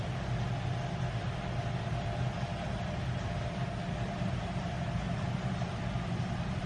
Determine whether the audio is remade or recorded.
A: recorded